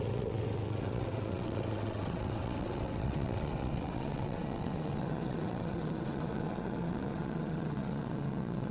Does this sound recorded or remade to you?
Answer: remade